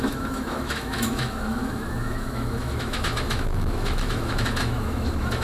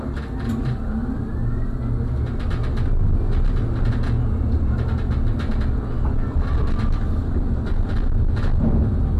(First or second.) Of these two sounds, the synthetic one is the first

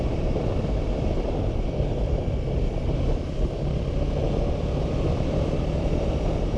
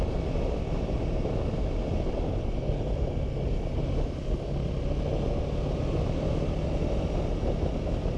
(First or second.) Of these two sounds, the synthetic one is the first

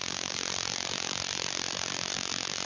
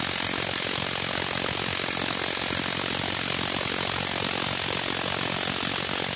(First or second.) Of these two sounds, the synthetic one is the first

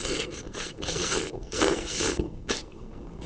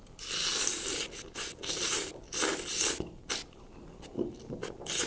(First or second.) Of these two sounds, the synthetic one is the first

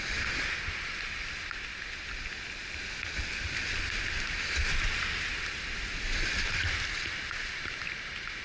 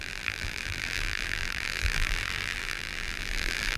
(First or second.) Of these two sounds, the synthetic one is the second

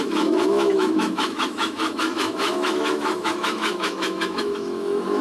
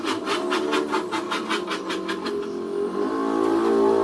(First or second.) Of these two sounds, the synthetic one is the first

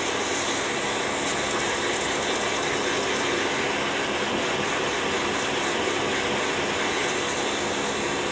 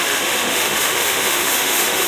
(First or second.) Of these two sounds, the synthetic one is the second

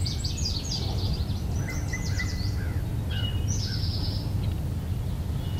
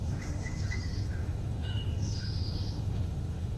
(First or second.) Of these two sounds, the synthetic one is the second